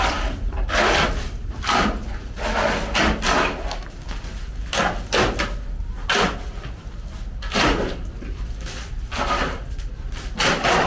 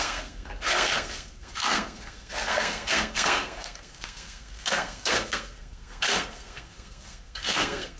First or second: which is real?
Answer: first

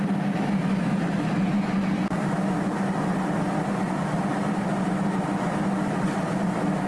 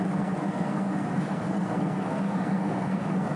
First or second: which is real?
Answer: first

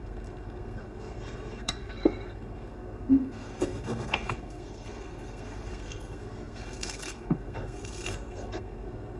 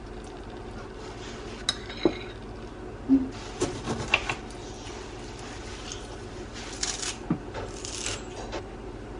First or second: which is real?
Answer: second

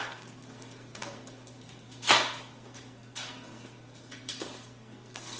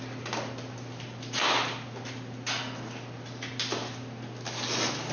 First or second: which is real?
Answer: second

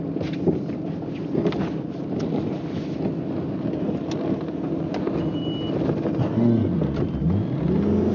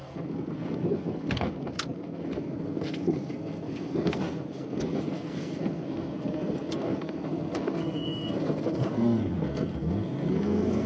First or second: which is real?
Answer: first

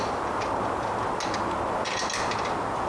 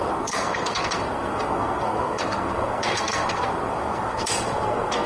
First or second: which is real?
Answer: first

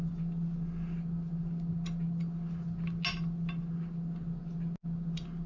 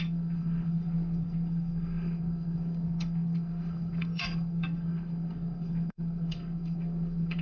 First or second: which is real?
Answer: first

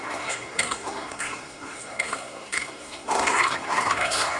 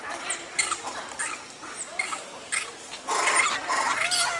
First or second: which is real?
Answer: second